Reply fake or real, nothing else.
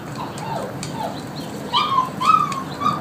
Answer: real